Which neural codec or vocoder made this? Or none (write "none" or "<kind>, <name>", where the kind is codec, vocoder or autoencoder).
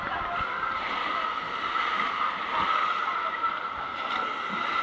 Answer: none